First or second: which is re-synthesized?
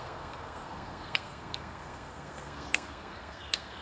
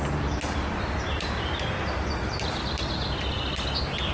first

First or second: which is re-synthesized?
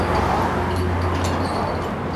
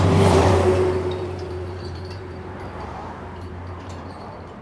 second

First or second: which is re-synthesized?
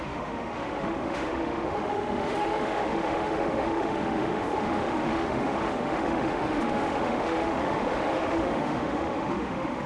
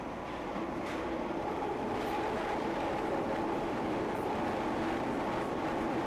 first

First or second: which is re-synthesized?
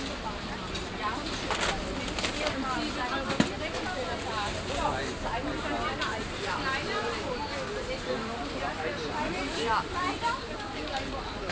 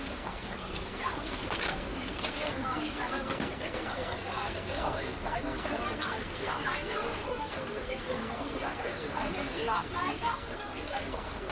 second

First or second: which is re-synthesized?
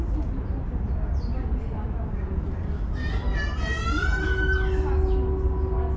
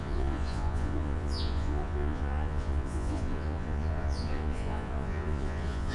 second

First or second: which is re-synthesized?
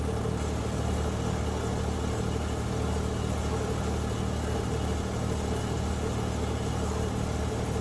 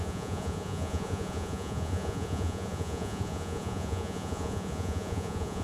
second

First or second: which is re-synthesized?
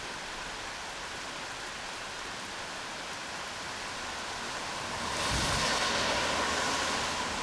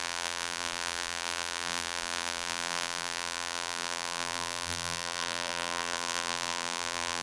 second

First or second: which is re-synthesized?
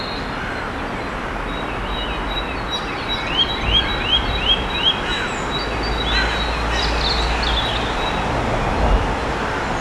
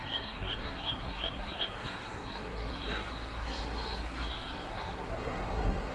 second